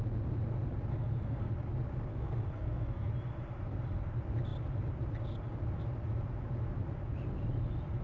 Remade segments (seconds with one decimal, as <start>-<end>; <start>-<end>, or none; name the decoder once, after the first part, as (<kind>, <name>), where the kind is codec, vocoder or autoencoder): 0.9-1.5 (codec, SNAC); 2.1-3.1